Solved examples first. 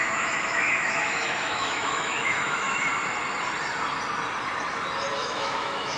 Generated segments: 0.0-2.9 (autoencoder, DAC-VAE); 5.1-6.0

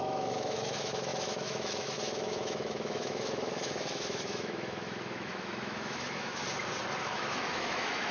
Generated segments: 0.0-6.4 (autoencoder, DAC-VAE); 7.0-8.1

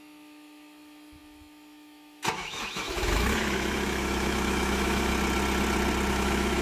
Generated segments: 0.0-5.1 (autoencoder, DAC-VAE); 6.1-6.6

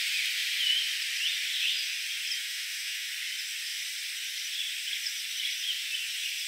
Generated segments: 2.4-3.1 (autoencoder, DAC-VAE)